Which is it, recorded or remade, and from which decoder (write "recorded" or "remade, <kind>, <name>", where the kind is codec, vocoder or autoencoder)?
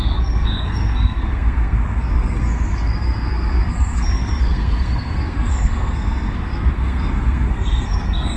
remade, codec, SNAC